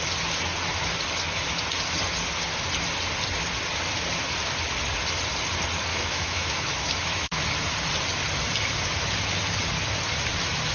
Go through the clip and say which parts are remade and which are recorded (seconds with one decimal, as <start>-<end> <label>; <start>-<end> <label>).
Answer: 0.0-5.9 recorded; 5.9-7.4 remade; 7.4-10.7 recorded